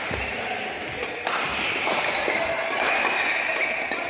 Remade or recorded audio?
recorded